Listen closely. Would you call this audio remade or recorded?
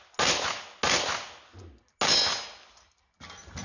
recorded